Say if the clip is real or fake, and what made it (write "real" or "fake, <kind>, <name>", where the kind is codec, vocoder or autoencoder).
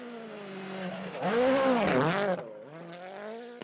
real